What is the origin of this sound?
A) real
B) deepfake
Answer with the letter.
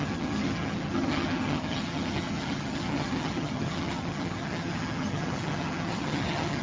B